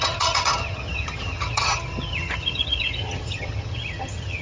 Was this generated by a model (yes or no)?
yes